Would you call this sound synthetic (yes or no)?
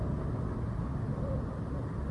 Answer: no